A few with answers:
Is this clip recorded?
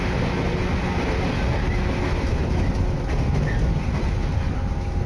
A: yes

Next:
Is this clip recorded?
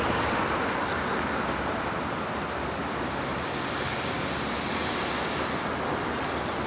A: yes